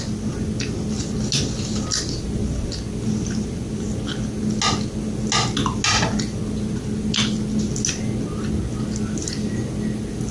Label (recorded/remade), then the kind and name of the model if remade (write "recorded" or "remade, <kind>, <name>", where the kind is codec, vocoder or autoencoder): recorded